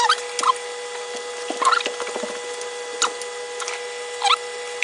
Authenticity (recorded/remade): recorded